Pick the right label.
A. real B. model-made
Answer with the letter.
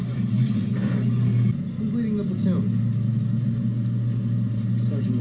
A